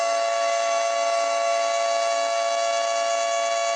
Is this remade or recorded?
remade